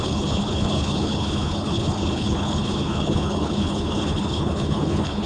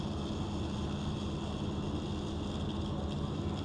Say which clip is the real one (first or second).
second